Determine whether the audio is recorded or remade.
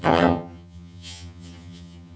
remade